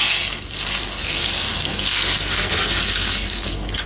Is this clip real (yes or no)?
no